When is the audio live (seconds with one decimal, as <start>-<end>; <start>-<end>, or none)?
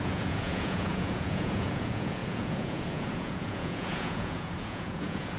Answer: none